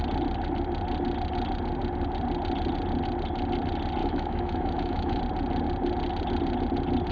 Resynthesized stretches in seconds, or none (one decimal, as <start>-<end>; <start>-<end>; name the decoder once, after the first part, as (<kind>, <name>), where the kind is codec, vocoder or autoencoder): 4.0-5.2 (autoencoder, DAC-VAE)